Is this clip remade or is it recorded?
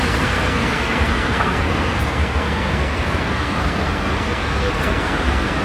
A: remade